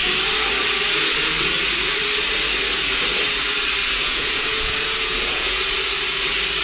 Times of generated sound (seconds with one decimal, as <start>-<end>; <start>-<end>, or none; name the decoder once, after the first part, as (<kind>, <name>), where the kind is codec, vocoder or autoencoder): 3.8-5.6 (vocoder, Vocos)